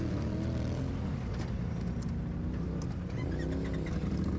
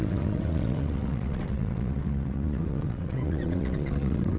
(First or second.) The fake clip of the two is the second